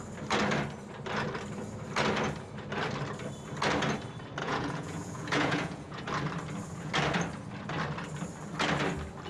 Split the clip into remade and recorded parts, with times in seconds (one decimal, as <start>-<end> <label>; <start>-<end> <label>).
0.0-4.4 recorded; 4.4-6.1 remade; 6.1-9.3 recorded